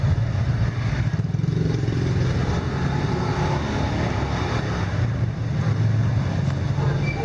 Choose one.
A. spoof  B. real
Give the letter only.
B